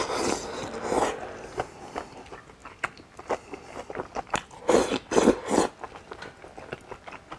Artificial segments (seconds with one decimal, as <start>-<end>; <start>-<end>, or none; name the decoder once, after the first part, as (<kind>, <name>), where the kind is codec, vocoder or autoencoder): none